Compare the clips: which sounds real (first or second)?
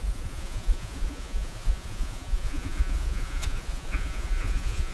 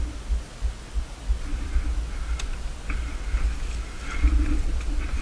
second